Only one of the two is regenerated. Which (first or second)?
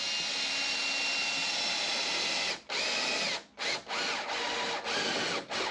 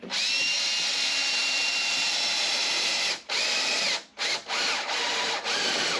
second